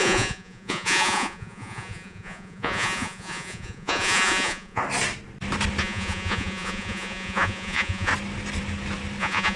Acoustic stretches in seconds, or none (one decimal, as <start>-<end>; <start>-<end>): 4.8-5.8; 8.1-9.2